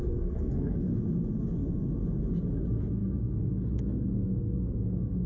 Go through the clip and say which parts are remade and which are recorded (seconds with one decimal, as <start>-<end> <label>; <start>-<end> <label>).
0.0-0.9 remade; 0.9-2.6 recorded; 2.6-5.3 remade